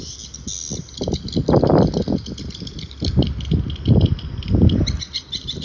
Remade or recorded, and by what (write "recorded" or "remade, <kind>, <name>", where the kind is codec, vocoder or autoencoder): recorded